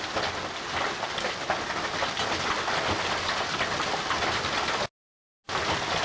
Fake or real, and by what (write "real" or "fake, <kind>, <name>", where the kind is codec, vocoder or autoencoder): real